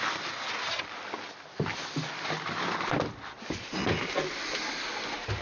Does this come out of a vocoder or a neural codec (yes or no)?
no